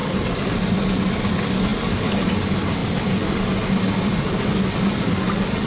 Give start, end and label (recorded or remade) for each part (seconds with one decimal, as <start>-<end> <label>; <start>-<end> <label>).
0.0-5.7 recorded